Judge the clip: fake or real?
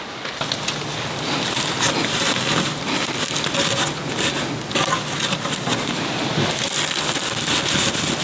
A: real